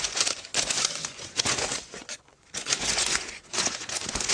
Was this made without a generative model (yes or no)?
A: no